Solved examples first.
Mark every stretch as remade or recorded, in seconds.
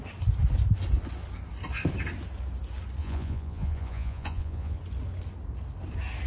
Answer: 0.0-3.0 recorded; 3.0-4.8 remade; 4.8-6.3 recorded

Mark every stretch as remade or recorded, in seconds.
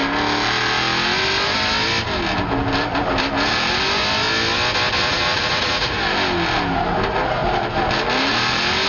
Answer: 0.0-5.0 recorded; 5.0-6.0 remade; 6.0-8.9 recorded